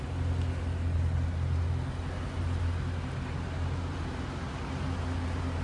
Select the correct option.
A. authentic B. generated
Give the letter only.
A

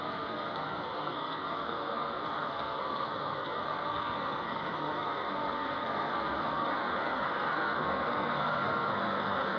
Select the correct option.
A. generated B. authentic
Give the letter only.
A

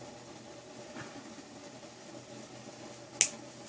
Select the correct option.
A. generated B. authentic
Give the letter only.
B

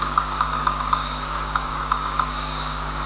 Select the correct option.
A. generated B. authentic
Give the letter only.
A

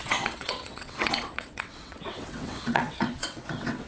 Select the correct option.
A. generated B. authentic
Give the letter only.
A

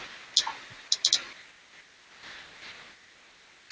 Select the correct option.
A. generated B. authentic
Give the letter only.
B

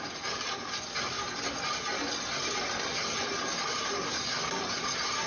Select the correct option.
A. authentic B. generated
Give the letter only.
A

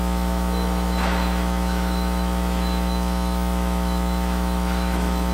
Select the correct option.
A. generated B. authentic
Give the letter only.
A